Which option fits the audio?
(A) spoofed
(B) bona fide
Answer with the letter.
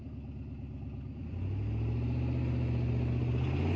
B